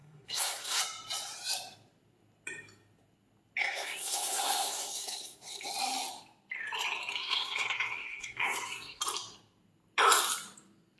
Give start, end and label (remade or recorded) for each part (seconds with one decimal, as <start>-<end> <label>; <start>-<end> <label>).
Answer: 0.0-0.8 remade; 0.8-3.6 recorded; 3.6-5.7 remade; 5.7-7.1 recorded; 7.1-9.0 remade; 9.0-11.0 recorded